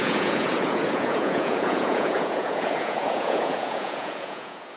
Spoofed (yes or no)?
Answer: yes